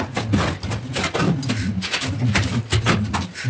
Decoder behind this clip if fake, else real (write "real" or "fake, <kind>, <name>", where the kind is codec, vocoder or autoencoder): real